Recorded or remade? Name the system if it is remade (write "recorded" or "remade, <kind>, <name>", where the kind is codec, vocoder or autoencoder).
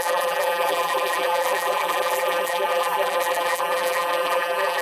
remade, vocoder, BigVGAN v2